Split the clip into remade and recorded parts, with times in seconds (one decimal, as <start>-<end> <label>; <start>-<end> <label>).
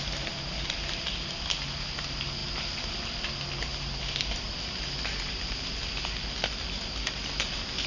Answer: 0.0-7.9 recorded